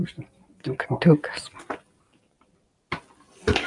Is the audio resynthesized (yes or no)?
no